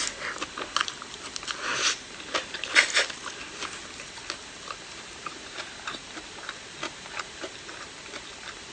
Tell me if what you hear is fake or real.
real